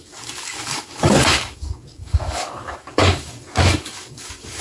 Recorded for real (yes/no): no